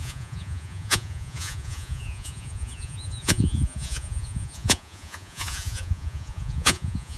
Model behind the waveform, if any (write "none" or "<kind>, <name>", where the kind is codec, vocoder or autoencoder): vocoder, Vocos